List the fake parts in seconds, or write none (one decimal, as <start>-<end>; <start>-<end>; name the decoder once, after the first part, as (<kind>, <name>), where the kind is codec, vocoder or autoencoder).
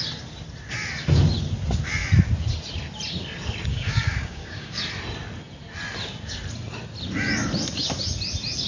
3.7-4.8 (codec, DAC)